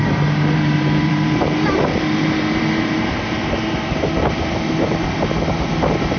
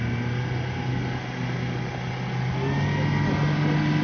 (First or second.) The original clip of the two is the second